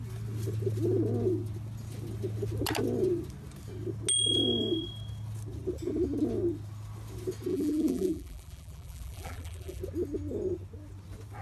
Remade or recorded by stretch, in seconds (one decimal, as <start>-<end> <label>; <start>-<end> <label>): 0.0-7.5 recorded; 7.5-9.8 remade; 9.8-11.4 recorded